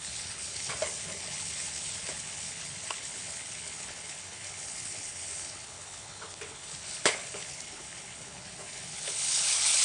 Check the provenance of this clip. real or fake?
fake